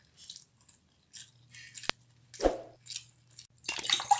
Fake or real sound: real